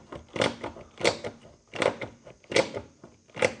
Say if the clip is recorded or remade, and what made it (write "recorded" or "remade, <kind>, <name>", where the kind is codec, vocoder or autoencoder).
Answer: recorded